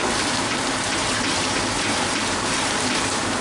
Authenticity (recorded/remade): remade